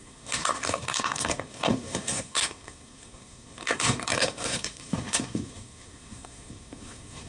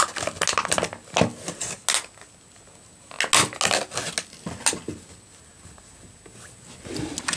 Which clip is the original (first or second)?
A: second